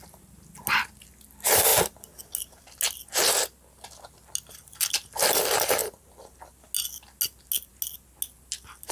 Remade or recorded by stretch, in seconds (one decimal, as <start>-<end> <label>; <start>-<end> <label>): 0.0-8.9 recorded